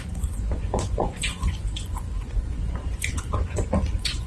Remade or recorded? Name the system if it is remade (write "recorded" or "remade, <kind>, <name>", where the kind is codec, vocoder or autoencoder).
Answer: remade, vocoder, Vocos